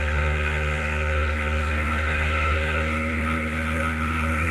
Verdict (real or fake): fake